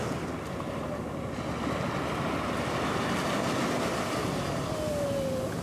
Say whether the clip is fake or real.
real